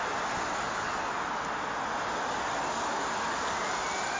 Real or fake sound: real